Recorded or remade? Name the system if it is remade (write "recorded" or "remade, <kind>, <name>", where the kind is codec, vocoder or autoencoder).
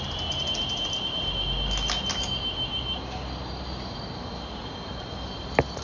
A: recorded